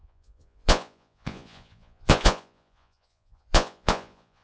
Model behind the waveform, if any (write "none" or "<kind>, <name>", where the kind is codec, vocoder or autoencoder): vocoder, Vocos